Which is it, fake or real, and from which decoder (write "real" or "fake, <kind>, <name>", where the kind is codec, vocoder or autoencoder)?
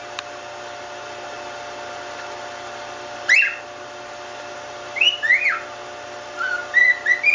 real